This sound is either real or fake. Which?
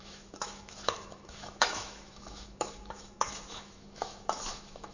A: fake